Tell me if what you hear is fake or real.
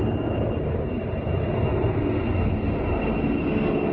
real